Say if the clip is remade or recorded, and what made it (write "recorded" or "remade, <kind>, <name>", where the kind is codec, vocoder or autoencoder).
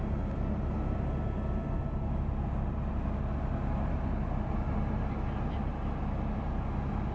recorded